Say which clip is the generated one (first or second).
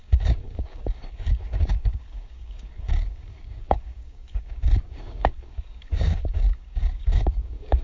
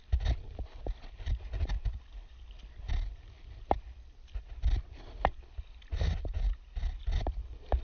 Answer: first